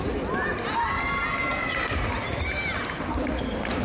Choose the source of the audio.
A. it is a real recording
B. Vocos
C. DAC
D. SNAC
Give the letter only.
A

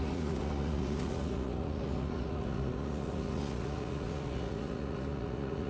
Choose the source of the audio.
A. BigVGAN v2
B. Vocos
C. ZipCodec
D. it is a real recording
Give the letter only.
B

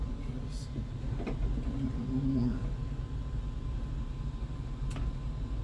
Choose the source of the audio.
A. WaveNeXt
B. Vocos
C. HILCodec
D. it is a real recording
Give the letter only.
D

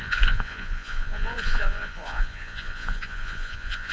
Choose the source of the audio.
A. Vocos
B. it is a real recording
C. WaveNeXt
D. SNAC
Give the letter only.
A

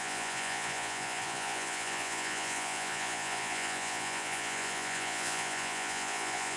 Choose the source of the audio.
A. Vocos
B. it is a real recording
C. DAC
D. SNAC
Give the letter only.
A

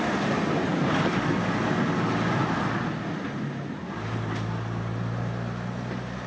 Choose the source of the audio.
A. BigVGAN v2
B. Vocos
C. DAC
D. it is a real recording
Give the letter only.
D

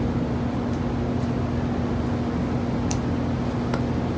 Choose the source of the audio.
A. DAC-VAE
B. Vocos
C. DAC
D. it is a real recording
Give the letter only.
D